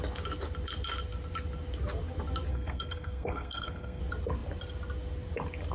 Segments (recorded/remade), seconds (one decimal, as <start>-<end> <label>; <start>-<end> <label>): 0.0-2.5 recorded; 2.5-4.0 remade; 4.0-5.7 recorded